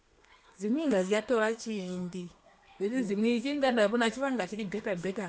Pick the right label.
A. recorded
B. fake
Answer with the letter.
B